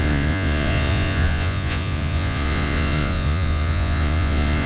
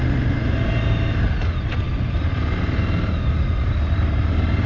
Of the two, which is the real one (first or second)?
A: second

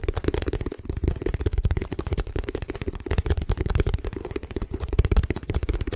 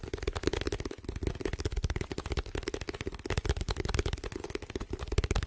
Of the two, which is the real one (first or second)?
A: second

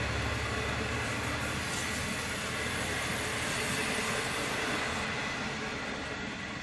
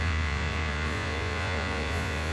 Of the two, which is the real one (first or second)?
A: first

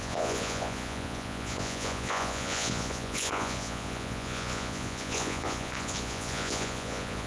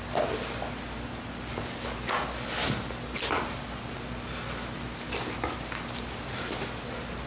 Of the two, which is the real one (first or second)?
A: second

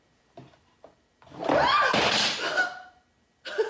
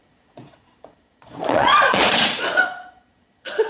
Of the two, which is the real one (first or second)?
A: first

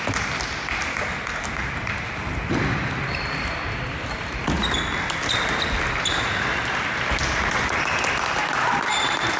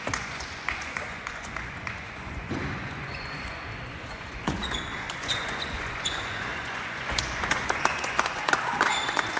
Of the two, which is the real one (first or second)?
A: first